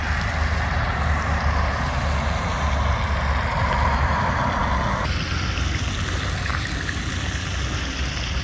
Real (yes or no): yes